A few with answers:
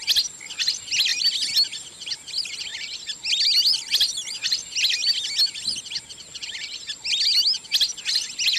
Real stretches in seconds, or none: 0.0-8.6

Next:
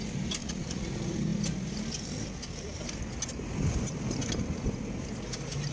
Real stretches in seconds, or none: 0.0-0.4; 0.9-5.7

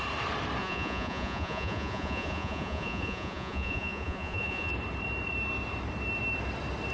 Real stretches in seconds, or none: 0.0-0.6; 4.7-6.9

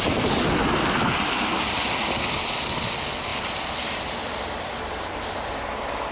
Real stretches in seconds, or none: 0.0-6.1

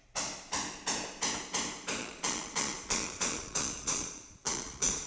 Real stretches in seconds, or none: 0.0-2.0